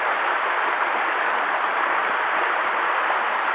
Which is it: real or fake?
real